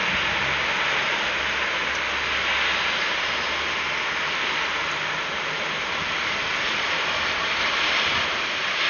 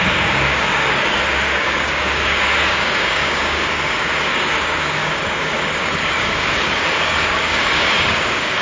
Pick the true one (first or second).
first